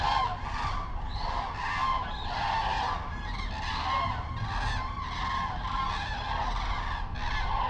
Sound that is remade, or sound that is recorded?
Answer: recorded